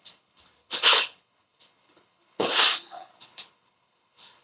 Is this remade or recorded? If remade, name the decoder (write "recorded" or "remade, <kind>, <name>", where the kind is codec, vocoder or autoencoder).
remade, codec, HILCodec